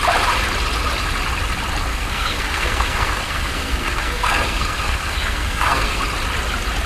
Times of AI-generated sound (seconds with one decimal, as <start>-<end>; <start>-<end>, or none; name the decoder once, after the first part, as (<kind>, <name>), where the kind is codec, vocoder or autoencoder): 1.9-6.0 (codec, SNAC)